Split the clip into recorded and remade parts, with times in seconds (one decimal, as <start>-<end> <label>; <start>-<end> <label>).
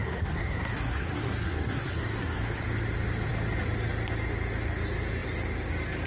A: 0.0-2.6 remade; 2.6-6.1 recorded